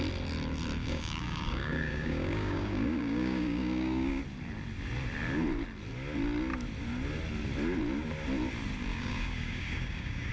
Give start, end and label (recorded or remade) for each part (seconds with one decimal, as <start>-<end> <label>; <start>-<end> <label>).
0.0-0.8 recorded; 0.8-4.2 remade; 4.2-8.9 recorded; 8.9-10.3 remade